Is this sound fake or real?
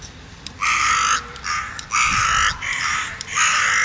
real